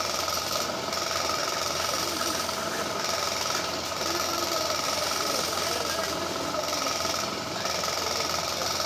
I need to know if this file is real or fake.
fake